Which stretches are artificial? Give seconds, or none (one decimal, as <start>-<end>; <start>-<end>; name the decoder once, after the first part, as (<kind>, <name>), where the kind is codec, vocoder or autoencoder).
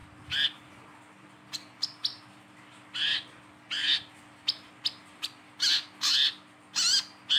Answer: none